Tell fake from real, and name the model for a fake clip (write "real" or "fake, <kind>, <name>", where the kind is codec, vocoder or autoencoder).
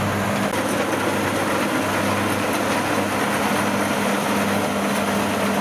real